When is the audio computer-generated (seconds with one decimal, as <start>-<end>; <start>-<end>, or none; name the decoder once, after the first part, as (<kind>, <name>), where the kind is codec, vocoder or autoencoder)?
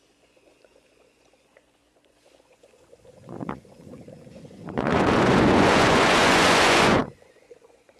0.0-8.0 (vocoder, Vocos)